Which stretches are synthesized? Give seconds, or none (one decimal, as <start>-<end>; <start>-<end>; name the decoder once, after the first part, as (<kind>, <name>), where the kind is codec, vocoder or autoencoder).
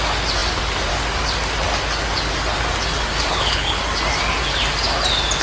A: 3.3-3.8 (codec, HILCodec)